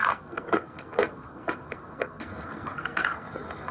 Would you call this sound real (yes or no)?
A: no